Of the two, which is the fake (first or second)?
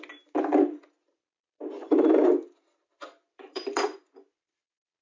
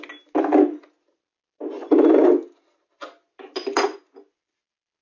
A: first